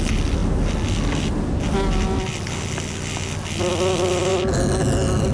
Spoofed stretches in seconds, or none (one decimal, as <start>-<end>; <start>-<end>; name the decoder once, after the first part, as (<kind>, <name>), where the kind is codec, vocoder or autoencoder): none